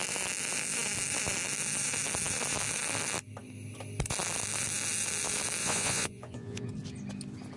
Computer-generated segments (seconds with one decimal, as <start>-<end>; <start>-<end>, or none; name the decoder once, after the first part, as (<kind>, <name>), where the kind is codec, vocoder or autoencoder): 5.6-6.7 (vocoder, Vocos)